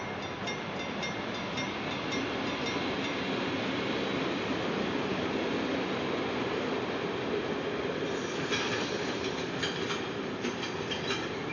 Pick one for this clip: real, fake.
real